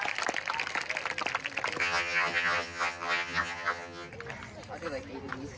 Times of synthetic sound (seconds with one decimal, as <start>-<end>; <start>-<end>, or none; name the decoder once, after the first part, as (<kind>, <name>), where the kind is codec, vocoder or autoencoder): 1.8-4.1 (vocoder, HiFi-GAN)